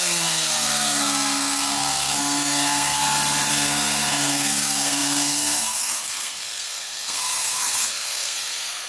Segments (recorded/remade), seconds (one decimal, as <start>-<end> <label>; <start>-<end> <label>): 0.0-3.0 remade; 3.0-3.5 recorded; 3.5-8.9 remade